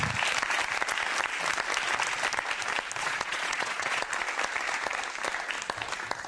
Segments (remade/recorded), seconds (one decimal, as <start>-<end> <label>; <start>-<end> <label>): 0.0-3.0 recorded; 3.0-4.0 remade; 4.0-6.3 recorded